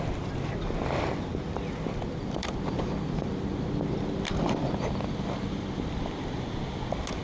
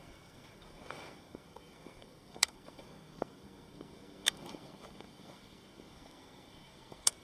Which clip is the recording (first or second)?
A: first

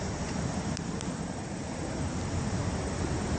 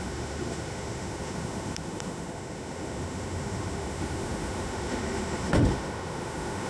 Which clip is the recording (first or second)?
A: first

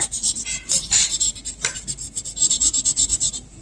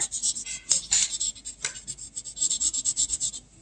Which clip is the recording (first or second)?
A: second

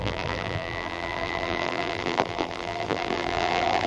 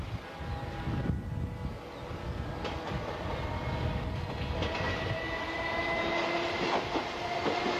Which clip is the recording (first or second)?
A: second